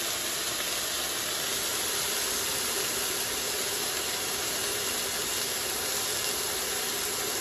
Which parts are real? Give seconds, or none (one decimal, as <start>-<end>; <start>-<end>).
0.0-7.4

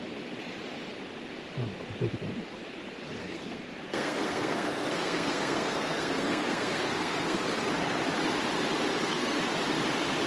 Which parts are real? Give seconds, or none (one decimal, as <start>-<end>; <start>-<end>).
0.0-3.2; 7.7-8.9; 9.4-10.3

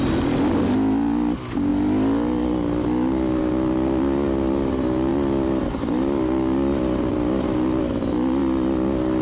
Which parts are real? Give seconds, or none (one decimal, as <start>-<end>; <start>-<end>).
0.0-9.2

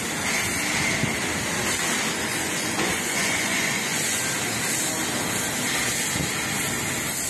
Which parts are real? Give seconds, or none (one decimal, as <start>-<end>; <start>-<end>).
0.0-2.3; 4.2-7.3

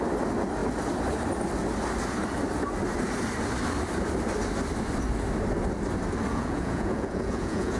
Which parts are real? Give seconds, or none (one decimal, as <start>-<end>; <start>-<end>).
0.0-6.3